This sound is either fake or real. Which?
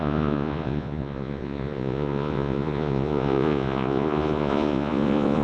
fake